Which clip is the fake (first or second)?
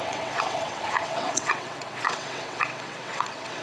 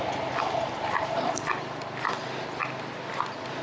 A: first